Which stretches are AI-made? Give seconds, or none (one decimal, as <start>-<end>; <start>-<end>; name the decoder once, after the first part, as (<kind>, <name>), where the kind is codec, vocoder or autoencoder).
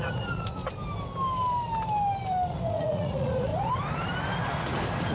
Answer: 0.0-0.6 (vocoder, Vocos); 2.5-3.5